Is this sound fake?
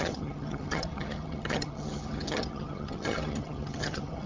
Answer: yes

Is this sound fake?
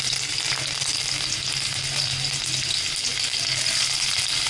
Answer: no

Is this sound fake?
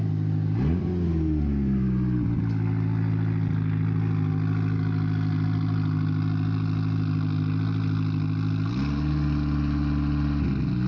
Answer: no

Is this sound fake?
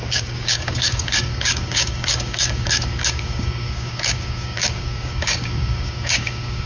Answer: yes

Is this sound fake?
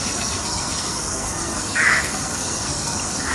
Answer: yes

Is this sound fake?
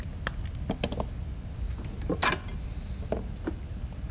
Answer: no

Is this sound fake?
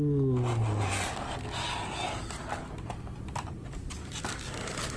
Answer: no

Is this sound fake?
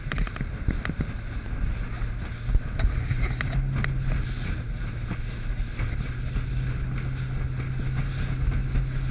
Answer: no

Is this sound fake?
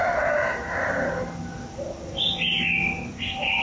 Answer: no